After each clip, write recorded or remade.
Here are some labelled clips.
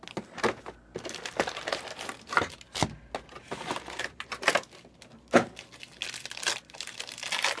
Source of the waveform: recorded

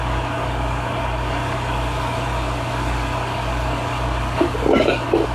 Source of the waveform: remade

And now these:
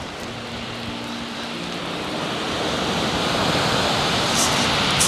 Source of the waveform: recorded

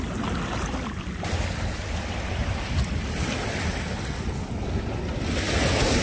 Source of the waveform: recorded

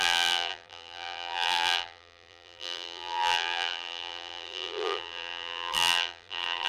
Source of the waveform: remade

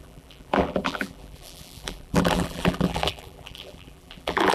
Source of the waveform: remade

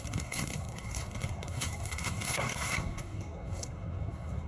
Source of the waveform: remade